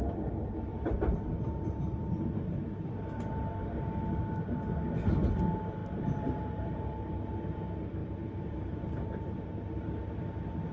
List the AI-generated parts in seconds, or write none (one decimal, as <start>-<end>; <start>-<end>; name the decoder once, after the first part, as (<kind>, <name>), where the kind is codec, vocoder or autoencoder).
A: 0.7-2.2 (vocoder, BigVGAN v2); 5.8-7.2; 8.0-9.9